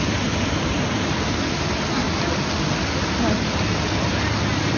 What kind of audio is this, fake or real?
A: real